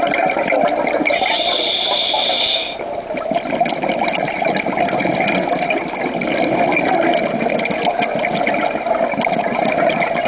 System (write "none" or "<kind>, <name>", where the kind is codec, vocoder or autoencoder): none